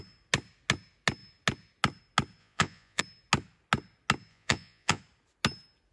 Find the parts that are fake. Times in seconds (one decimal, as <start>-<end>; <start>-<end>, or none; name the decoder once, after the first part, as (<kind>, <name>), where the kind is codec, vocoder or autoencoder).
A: 2.4-3.0 (vocoder, Vocos); 4.3-5.0